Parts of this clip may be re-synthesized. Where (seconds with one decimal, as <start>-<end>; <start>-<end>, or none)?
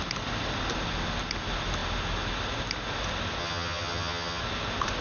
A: 3.4-4.4